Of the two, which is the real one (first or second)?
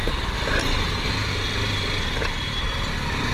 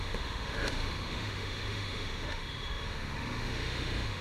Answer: first